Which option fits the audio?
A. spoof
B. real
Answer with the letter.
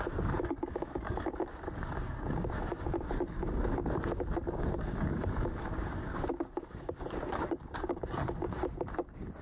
A